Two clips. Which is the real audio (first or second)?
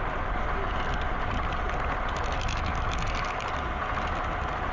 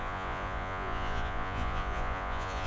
first